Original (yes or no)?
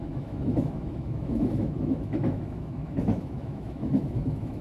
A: no